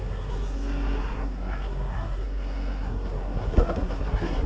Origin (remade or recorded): remade